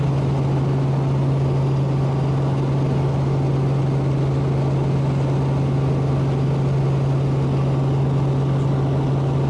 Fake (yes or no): no